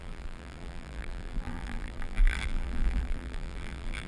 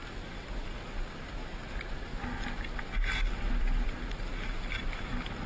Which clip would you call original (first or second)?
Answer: second